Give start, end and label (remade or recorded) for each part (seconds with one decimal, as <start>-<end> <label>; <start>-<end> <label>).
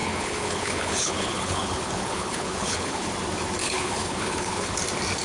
0.0-3.1 remade; 3.1-3.6 recorded; 3.6-4.8 remade; 4.8-5.2 recorded